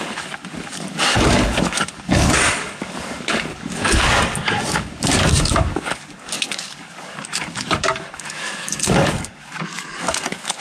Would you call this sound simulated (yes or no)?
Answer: yes